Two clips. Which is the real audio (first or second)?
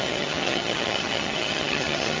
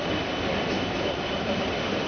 second